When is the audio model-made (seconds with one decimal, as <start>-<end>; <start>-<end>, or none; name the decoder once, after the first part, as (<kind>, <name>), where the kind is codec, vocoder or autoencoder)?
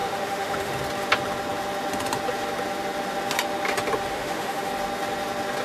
0.0-0.7 (autoencoder, DAC-VAE); 4.1-4.7